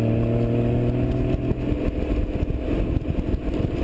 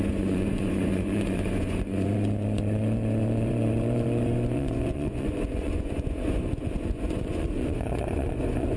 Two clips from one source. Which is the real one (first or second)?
first